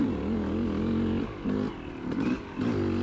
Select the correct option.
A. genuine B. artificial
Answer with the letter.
A